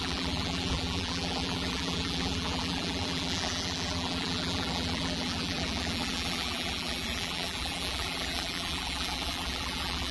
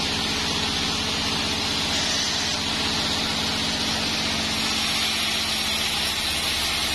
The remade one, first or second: first